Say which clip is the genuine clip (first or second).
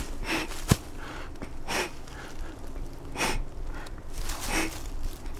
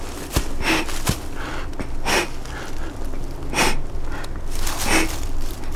second